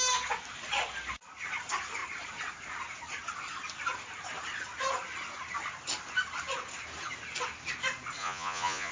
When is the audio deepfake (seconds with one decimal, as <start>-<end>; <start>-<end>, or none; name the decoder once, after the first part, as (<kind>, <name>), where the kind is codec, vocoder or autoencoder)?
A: 8.2-8.9 (vocoder, Vocos)